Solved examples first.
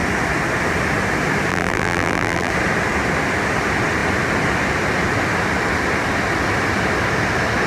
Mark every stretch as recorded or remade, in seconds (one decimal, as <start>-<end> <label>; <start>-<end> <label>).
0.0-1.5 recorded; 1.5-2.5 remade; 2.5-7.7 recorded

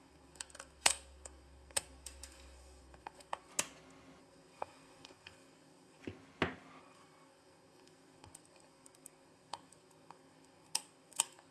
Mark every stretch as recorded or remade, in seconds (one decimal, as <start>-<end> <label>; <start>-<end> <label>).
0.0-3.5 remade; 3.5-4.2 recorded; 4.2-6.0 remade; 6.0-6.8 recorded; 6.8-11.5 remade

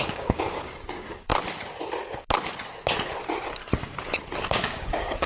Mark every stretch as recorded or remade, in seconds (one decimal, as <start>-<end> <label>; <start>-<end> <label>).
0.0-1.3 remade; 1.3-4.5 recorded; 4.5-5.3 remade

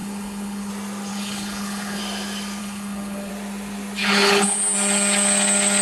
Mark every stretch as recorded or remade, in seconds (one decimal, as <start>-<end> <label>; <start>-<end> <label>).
0.0-0.7 remade; 0.7-1.1 recorded; 1.1-2.0 remade; 2.0-2.6 recorded; 2.6-3.3 remade; 3.3-4.0 recorded; 4.0-4.6 remade; 4.6-5.8 recorded